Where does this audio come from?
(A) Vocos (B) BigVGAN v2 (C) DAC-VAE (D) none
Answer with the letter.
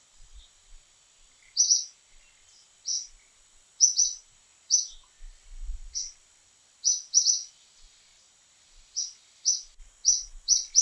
D